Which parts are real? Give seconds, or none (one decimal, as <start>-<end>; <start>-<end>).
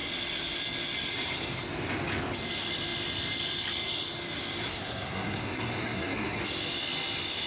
0.0-4.7; 6.4-7.5